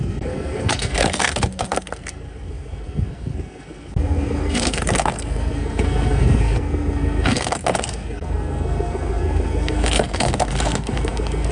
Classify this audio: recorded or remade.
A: remade